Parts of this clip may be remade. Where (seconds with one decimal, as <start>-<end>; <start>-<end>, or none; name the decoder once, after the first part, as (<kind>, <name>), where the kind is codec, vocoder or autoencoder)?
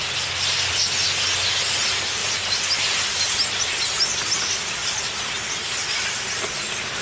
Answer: none